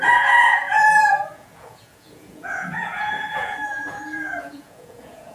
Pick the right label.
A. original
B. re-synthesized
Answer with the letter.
B